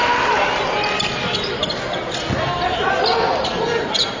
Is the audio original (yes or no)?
yes